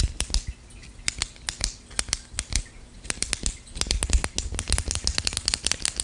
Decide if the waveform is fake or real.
real